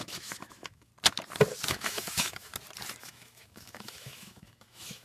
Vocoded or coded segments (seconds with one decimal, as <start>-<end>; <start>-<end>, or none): 0.0-0.9; 1.7-2.5; 3.0-5.0